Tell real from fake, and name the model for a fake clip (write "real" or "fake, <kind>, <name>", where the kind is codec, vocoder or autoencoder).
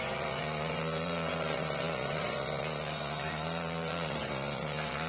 fake, vocoder, Vocos